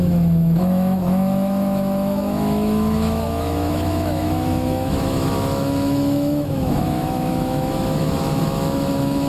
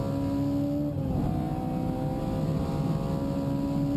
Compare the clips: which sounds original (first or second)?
second